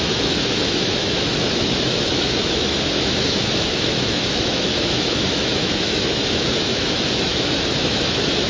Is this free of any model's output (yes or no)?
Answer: no